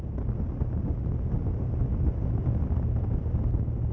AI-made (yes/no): no